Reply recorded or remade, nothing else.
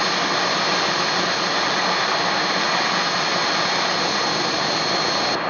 recorded